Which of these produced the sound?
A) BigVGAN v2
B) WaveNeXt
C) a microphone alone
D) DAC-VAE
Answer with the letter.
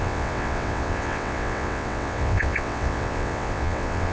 B